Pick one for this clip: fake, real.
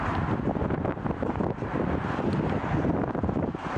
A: real